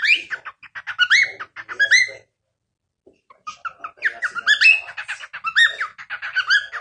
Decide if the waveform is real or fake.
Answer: real